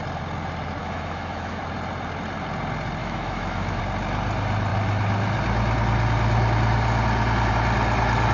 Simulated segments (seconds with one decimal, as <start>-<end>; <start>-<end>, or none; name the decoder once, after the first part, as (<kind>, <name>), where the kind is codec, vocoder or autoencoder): 0.8-1.6 (autoencoder, DAC-VAE); 3.0-3.8